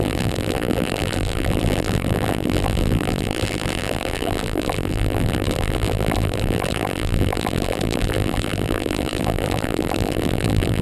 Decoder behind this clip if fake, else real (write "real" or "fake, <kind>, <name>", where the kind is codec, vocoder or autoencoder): fake, vocoder, BigVGAN v2